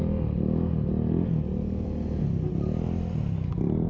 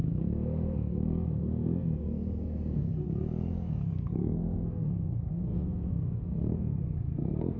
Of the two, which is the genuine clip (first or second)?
first